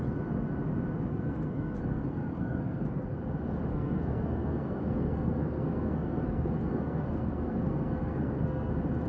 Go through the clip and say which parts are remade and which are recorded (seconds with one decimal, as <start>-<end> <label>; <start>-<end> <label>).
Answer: 0.0-1.1 recorded; 1.1-3.2 remade; 3.2-3.7 recorded; 3.7-8.7 remade; 8.7-9.1 recorded